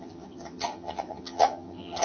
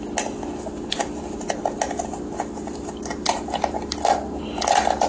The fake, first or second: first